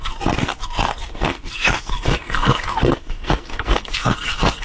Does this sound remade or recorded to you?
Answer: remade